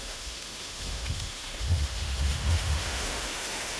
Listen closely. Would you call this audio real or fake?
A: fake